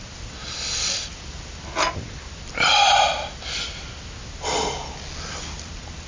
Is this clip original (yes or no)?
yes